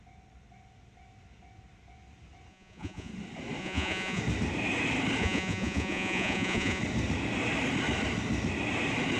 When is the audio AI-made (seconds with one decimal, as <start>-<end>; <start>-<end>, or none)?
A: 2.5-3.1; 3.6-4.2; 5.2-6.8